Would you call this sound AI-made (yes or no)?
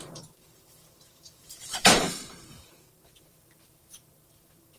yes